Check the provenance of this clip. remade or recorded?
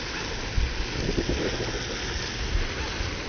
recorded